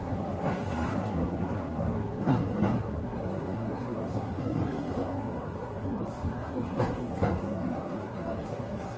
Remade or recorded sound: remade